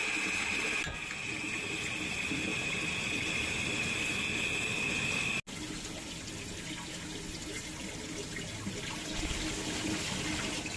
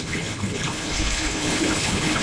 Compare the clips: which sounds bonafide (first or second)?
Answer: first